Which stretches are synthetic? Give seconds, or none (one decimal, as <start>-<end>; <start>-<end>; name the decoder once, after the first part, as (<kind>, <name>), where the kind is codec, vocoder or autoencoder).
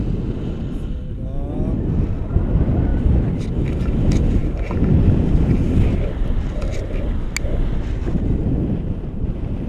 2.9-3.4 (vocoder, BigVGAN v2)